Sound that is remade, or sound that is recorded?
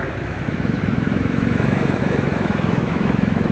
remade